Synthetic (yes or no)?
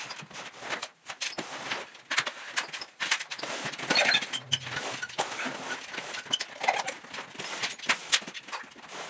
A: no